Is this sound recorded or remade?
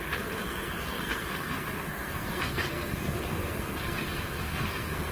remade